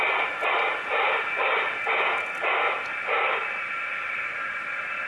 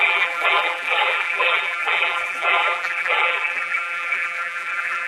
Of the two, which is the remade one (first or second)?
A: second